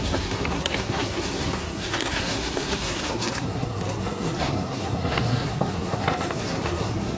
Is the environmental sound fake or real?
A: fake